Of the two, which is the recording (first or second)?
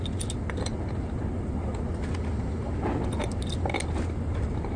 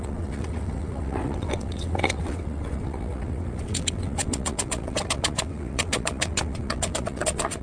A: first